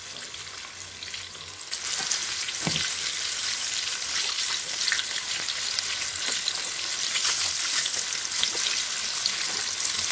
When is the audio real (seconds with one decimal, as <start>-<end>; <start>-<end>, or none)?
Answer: 0.0-2.2; 4.8-10.1